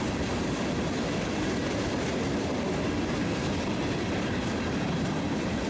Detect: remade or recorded recorded